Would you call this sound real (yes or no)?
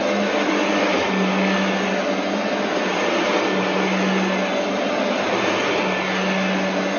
yes